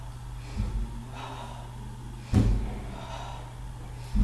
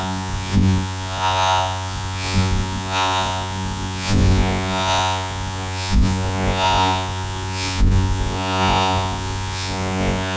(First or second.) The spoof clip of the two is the second